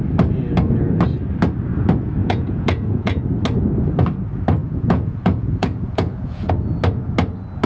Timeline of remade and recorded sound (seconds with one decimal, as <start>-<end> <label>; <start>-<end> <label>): 0.0-2.2 recorded; 2.2-3.2 remade; 3.2-4.6 recorded; 4.6-6.5 remade; 6.5-7.7 recorded